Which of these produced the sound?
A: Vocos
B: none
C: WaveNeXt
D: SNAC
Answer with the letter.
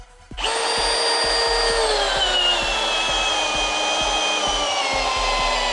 B